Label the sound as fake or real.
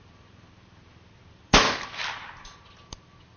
real